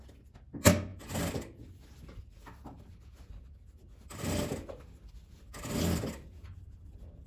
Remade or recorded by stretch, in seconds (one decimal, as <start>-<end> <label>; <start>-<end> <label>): 0.0-7.3 recorded